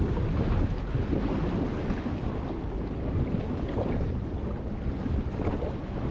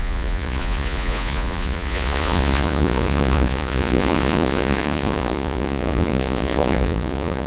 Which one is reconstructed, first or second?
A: second